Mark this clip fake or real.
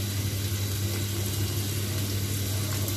real